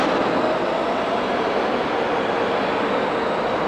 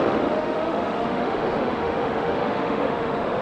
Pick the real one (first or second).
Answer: first